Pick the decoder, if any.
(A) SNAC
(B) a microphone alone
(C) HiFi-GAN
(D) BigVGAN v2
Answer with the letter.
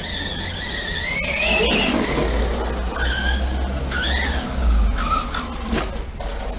B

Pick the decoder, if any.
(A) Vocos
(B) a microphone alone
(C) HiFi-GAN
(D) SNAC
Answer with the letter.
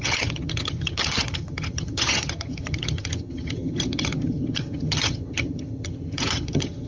C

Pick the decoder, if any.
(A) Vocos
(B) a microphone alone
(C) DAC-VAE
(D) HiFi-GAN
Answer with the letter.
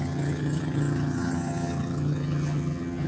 D